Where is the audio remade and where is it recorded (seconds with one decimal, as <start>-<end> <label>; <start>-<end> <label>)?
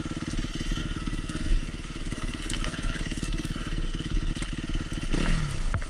0.0-0.8 recorded; 0.8-4.3 remade; 4.3-5.9 recorded